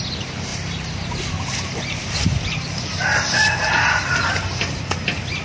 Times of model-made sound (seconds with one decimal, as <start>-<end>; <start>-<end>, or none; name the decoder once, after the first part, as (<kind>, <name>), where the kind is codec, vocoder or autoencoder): none